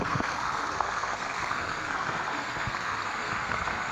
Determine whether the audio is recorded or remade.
remade